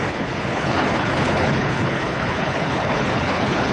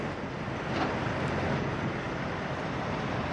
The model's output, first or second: first